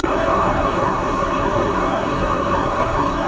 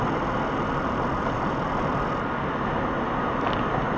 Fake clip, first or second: first